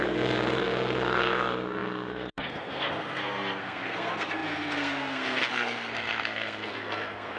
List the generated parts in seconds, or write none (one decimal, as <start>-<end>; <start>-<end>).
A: 0.0-7.4